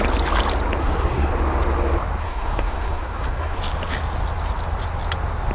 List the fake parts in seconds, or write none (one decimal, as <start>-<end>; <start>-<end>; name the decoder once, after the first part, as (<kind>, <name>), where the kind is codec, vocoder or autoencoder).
0.8-1.3 (codec, SNAC); 2.2-3.6